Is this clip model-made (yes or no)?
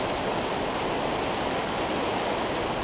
no